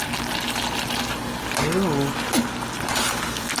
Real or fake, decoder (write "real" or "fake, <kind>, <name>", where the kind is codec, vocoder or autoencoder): real